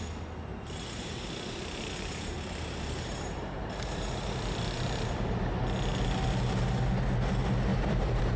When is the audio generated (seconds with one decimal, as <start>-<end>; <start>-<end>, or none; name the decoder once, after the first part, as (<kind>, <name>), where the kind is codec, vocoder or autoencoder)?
0.5-5.1 (vocoder, BigVGAN v2); 7.7-8.4

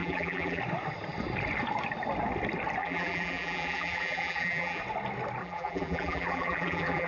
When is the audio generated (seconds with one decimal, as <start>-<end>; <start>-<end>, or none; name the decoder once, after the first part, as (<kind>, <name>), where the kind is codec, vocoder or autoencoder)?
0.0-0.6 (vocoder, BigVGAN v2); 2.8-4.8; 5.4-7.1

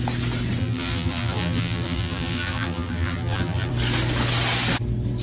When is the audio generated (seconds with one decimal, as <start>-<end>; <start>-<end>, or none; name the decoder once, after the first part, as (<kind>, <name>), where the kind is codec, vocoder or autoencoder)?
0.6-3.7 (vocoder, BigVGAN v2)

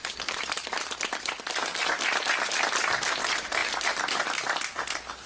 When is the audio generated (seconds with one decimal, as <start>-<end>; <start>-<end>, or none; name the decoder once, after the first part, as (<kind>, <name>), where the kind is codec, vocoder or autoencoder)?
0.0-1.6 (vocoder, BigVGAN v2); 3.2-5.3

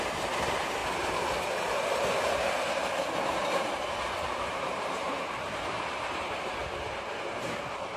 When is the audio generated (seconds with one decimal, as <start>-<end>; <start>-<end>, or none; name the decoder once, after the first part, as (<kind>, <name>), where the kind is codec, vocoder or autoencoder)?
0.0-0.8 (vocoder, BigVGAN v2); 4.4-6.6; 7.3-8.0

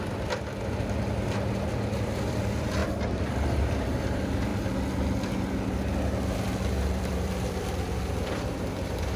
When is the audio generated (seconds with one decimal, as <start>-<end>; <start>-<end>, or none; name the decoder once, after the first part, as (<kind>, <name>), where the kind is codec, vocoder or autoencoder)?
0.0-4.5 (vocoder, BigVGAN v2); 6.7-9.2